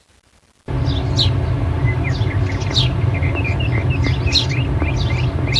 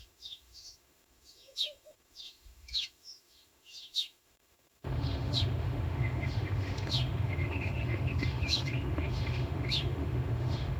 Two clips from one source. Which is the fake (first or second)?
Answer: second